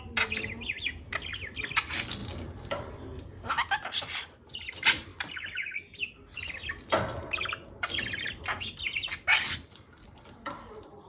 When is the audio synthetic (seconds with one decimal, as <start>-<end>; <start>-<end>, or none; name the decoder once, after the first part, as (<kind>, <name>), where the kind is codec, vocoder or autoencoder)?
none